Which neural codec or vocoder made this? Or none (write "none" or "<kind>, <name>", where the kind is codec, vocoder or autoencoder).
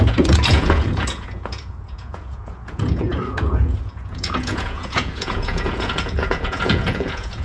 vocoder, Vocos